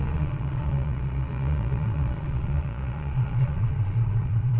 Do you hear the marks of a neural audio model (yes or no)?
yes